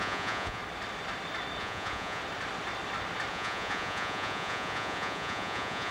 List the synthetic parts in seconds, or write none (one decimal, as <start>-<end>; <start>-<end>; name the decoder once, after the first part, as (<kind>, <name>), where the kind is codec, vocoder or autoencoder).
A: 0.0-0.6 (vocoder, Vocos); 1.6-2.2; 3.3-5.9